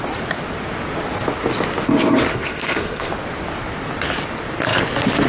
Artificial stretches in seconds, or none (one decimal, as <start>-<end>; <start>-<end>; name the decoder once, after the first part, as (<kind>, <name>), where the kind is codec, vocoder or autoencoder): 2.3-3.1 (codec, SNAC)